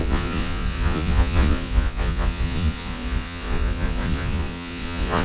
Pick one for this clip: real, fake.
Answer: fake